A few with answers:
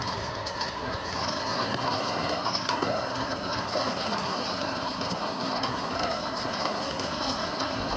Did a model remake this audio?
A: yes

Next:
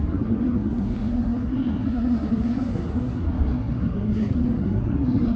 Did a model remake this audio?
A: yes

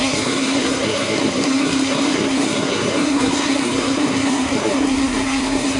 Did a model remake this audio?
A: yes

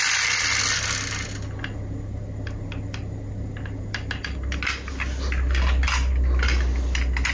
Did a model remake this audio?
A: no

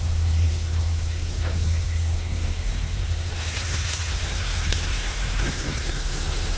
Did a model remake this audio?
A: yes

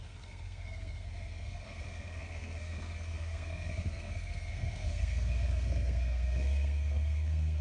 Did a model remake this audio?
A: yes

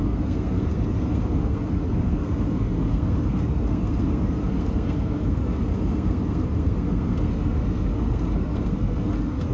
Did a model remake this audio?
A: yes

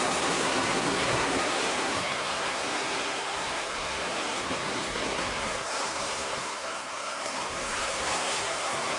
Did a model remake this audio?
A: yes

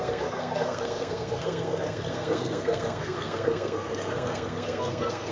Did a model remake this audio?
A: yes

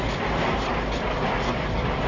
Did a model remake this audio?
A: no